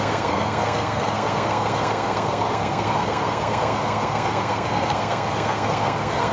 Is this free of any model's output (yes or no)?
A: no